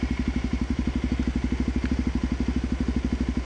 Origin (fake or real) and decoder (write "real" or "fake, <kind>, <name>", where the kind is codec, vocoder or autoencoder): real